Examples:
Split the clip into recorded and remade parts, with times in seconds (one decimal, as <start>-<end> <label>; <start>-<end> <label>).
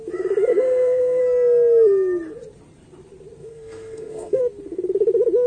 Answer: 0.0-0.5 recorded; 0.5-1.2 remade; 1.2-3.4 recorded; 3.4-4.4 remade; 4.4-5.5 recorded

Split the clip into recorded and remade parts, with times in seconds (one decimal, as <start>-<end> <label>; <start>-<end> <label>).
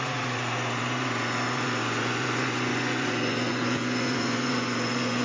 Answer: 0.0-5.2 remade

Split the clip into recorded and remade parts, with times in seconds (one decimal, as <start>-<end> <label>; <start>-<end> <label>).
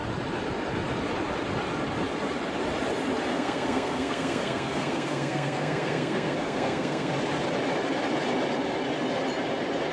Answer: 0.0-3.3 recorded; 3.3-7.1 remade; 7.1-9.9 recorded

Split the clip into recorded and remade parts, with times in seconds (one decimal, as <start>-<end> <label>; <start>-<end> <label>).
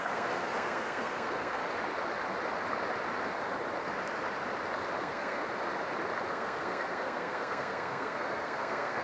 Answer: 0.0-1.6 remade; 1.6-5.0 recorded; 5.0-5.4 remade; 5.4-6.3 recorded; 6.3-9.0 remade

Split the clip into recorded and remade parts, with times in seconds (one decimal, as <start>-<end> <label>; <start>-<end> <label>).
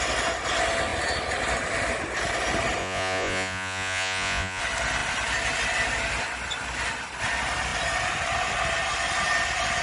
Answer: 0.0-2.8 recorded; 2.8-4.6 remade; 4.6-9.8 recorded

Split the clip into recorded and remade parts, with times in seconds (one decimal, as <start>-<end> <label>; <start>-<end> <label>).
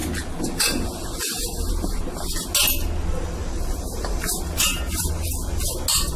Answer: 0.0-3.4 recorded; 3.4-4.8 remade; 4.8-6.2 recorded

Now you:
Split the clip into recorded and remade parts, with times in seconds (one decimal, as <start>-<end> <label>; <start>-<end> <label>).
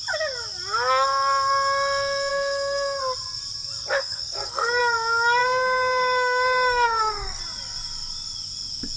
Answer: 0.0-2.3 recorded; 2.3-3.0 remade; 3.0-4.0 recorded; 4.0-4.8 remade; 4.8-5.4 recorded; 5.4-7.4 remade; 7.4-9.0 recorded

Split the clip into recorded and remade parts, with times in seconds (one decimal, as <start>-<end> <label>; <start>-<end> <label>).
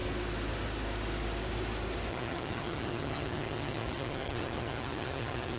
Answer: 0.0-2.1 recorded; 2.1-5.6 remade